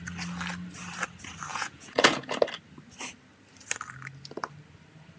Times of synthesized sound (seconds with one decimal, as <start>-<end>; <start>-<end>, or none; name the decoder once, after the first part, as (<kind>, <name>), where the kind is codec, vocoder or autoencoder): 1.5-2.4 (vocoder, Vocos)